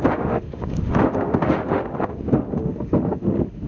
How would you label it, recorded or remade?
remade